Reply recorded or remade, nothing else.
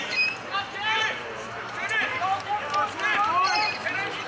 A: remade